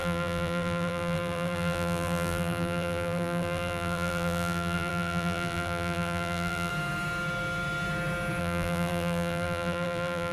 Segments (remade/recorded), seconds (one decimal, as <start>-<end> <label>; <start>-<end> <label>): 0.0-6.7 remade; 6.7-8.4 recorded; 8.4-10.3 remade